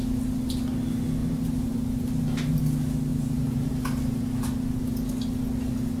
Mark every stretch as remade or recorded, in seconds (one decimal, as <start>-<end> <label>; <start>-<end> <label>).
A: 0.0-1.2 recorded; 1.2-2.6 remade; 2.6-3.1 recorded; 3.1-3.7 remade; 3.7-6.0 recorded